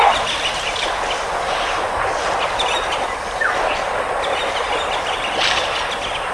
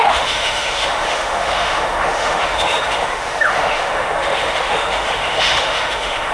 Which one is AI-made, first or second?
second